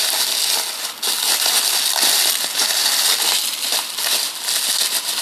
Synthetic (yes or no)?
no